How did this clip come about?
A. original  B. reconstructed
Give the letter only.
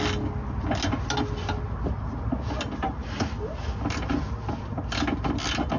A